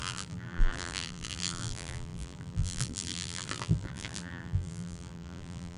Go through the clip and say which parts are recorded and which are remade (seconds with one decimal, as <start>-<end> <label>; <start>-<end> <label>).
0.0-5.8 remade

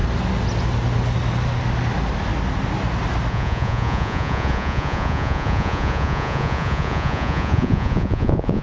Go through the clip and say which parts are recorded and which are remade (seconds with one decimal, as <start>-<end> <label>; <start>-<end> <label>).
0.0-3.3 recorded; 3.3-8.6 remade